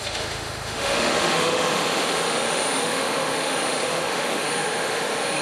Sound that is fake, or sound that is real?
fake